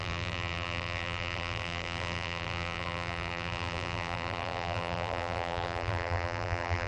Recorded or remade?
remade